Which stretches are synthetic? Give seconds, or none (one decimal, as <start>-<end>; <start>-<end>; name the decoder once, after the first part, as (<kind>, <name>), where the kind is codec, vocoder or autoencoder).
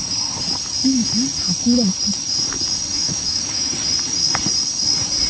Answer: 2.9-3.7 (autoencoder, DAC-VAE)